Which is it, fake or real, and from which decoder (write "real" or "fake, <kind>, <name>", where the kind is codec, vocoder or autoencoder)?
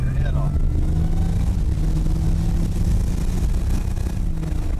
real